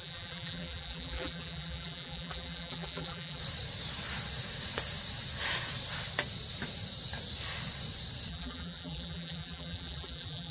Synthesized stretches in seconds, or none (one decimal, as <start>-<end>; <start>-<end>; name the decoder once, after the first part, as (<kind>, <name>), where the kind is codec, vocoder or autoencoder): 0.0-3.4 (vocoder, BigVGAN v2); 8.3-10.5